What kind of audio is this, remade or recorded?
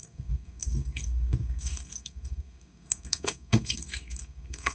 remade